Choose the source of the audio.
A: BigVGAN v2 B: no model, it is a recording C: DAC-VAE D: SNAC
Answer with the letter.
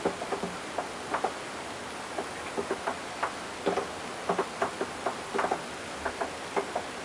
B